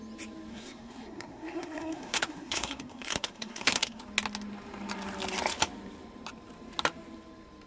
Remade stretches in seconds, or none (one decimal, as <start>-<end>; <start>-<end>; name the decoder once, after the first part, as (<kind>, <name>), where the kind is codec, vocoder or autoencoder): 0.5-4.0 (codec, SNAC)